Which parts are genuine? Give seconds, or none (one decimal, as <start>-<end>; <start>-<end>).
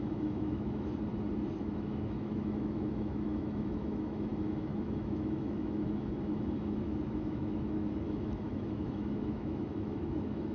0.9-1.6